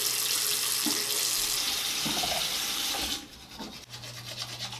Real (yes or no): yes